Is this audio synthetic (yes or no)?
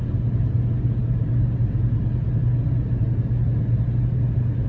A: no